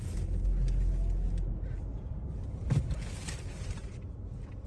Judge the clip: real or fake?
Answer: real